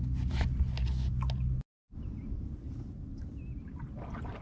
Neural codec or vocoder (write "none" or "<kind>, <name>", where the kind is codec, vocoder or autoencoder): none